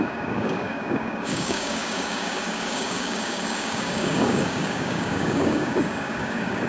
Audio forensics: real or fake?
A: fake